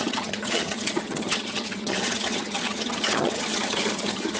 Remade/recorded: remade